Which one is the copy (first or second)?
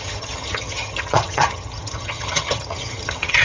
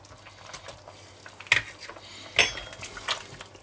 first